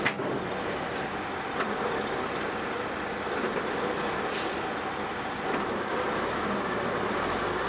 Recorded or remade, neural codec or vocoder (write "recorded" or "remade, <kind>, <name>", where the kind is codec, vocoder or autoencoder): recorded